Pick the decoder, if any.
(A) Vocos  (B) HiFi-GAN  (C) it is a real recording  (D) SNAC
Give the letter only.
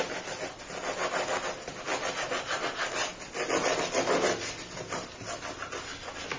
C